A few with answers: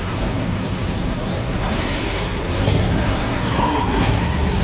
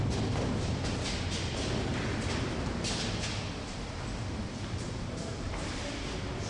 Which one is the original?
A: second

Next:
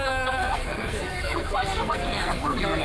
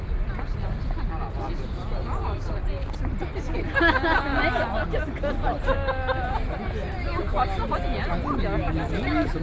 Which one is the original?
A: second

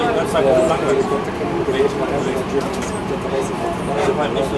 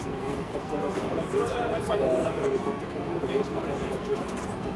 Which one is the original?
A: first